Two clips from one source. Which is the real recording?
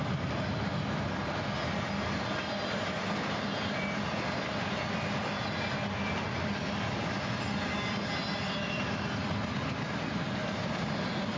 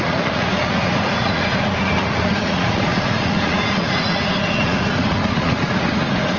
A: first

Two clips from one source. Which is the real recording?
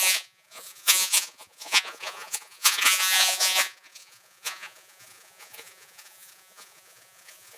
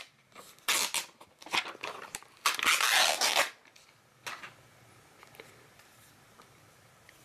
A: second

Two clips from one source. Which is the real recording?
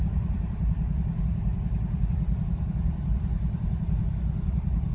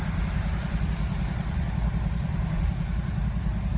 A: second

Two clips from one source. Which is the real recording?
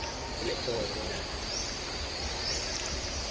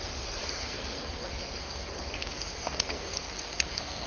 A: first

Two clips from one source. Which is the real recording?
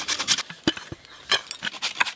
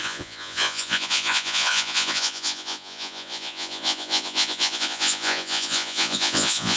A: first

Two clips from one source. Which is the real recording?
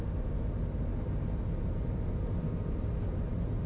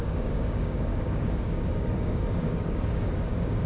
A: first